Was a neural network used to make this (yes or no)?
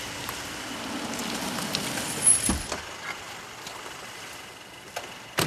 no